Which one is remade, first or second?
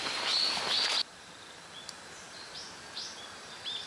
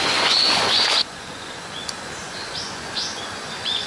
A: second